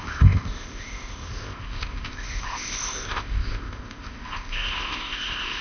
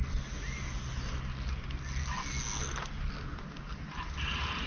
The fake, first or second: first